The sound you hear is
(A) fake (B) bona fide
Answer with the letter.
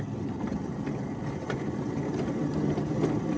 B